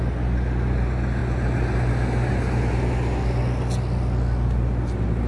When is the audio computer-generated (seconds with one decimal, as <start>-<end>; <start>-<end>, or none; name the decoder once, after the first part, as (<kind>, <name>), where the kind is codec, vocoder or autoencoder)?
none